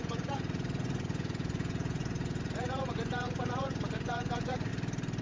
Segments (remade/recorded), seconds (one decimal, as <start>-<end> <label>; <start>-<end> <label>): 0.0-4.7 remade; 4.7-5.2 recorded